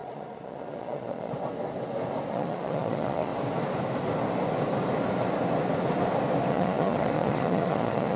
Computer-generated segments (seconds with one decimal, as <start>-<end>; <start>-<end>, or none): 0.0-1.3; 2.3-3.3; 6.5-8.2